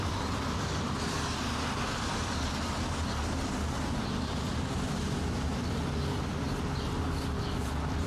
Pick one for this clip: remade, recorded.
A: recorded